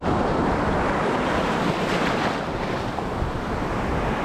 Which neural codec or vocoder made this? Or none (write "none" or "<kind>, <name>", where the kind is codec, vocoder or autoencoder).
vocoder, BigVGAN v2